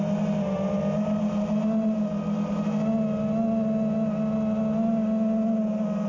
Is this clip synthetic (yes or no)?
no